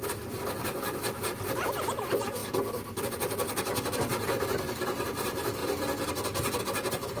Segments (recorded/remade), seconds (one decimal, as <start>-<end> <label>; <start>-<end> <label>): 0.0-7.2 remade